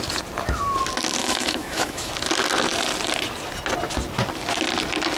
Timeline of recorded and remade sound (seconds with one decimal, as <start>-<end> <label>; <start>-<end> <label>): 0.0-1.2 recorded; 1.2-2.1 remade; 2.1-5.2 recorded